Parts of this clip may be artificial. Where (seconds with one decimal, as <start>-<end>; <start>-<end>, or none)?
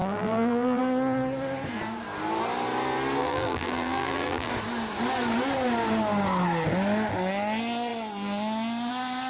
0.0-0.8; 3.2-4.5